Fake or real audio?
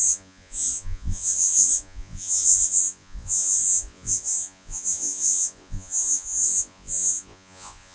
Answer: fake